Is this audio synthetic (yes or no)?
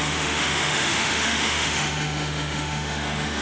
yes